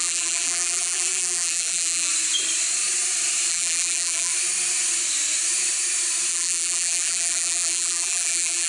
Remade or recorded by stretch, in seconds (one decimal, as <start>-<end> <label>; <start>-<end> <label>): 0.0-2.1 remade; 2.1-3.5 recorded; 3.5-4.3 remade; 4.3-6.3 recorded; 6.3-8.7 remade